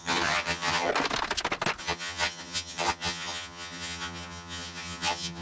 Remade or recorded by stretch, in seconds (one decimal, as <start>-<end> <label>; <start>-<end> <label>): 0.0-0.9 remade; 0.9-1.8 recorded; 1.8-5.4 remade